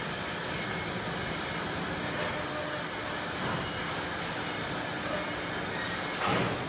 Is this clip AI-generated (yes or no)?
no